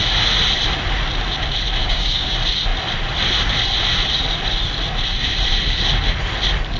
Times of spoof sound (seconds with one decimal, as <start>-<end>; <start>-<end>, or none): 1.8-2.3